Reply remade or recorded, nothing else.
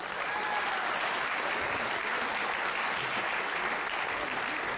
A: recorded